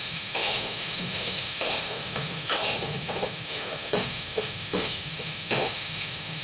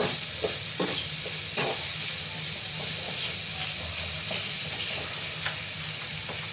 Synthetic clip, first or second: first